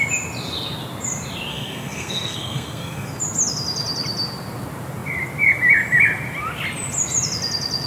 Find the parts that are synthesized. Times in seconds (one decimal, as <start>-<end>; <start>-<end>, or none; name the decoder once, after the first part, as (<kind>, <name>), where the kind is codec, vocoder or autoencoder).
1.5-3.2 (codec, SNAC)